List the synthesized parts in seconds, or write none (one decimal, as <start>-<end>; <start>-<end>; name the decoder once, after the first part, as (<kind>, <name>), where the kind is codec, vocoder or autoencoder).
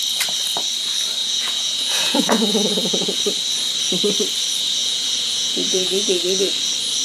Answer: 1.2-3.2 (vocoder, Vocos); 4.8-6.5